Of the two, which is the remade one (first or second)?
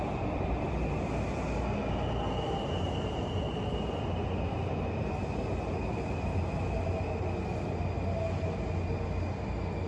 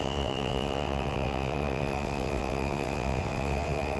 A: second